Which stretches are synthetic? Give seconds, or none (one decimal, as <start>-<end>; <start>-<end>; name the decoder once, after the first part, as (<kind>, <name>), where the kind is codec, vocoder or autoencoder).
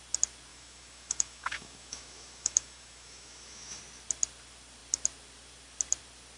0.5-3.8 (autoencoder, DAC-VAE)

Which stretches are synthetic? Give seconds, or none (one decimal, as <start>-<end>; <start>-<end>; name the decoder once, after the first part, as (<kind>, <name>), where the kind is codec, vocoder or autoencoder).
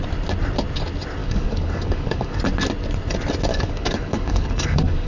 1.2-2.4 (codec, DAC); 3.5-5.1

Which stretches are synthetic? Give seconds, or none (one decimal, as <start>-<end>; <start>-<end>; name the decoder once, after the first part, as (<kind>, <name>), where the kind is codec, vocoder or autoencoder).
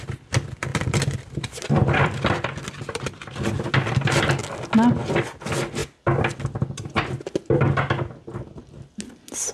0.7-3.7 (vocoder, BigVGAN v2)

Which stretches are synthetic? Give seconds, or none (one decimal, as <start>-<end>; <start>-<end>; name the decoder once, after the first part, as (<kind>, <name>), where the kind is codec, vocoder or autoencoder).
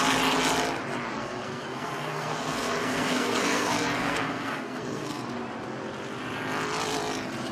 1.1-5.2 (codec, SNAC)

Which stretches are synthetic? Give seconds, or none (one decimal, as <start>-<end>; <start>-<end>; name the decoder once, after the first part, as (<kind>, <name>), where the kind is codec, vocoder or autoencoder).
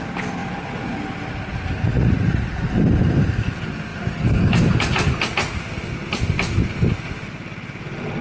1.9-2.5 (vocoder, Vocos)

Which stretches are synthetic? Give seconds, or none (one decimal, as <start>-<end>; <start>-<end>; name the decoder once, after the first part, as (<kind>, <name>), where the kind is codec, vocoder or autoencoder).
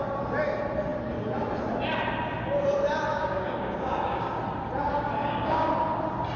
3.1-4.4 (codec, DAC); 5.2-5.7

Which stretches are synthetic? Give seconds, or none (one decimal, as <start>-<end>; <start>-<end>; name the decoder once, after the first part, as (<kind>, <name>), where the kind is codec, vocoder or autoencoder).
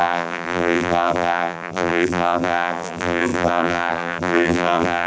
0.0-5.1 (vocoder, BigVGAN v2)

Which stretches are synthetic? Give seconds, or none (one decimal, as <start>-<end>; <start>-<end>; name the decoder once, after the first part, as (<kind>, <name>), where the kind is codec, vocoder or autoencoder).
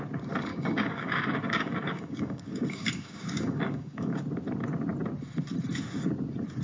0.5-4.2 (codec, DAC)